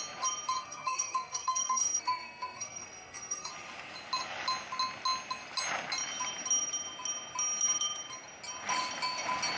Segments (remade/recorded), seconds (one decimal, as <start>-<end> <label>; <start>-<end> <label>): 0.0-0.6 recorded; 0.6-3.5 remade; 3.5-9.6 recorded